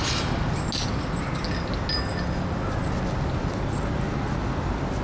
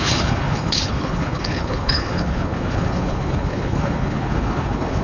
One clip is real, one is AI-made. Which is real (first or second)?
first